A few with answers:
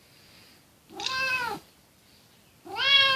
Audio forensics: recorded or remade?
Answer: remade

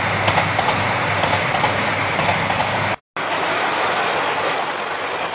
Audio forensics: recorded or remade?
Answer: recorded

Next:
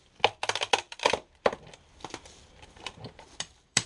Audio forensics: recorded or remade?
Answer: remade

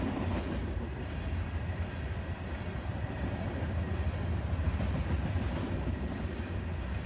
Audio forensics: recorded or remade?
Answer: remade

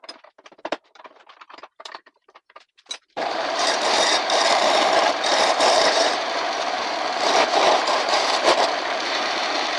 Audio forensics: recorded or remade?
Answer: remade